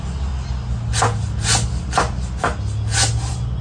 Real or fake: real